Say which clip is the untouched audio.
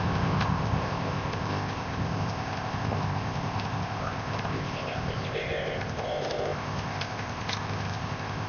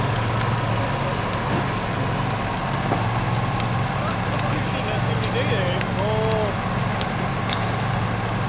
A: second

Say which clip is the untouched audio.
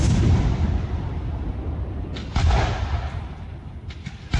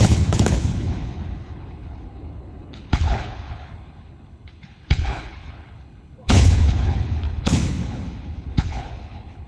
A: first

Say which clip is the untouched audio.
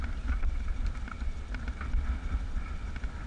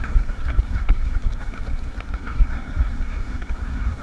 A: first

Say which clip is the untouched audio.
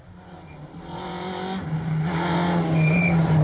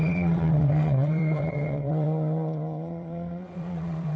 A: first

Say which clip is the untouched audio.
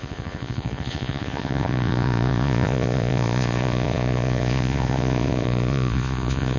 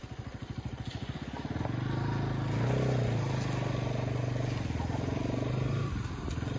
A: second